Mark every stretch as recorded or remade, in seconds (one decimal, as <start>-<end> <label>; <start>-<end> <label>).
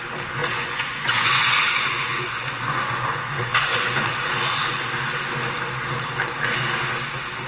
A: 0.0-0.4 recorded; 0.4-4.8 remade; 4.8-7.5 recorded